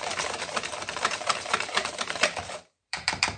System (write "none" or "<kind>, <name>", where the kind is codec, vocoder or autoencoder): vocoder, BigVGAN v2